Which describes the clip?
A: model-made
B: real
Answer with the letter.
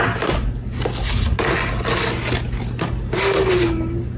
B